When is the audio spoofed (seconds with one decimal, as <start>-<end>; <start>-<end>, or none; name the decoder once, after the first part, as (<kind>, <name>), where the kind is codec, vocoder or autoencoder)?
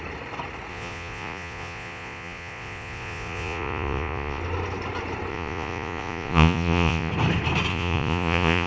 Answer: 0.7-4.4 (vocoder, Vocos); 5.3-7.1; 7.7-8.7